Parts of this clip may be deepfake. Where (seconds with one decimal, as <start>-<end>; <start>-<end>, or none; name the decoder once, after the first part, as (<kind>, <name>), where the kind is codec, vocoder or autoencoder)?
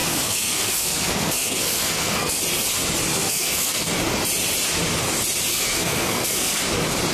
0.0-2.4 (codec, SNAC); 3.1-3.9; 5.5-6.6